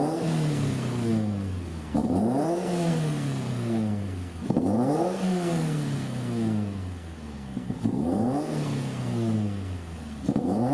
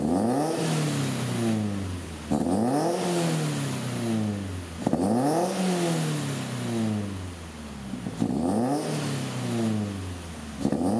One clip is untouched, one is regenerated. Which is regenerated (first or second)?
first